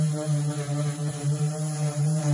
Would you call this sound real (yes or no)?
no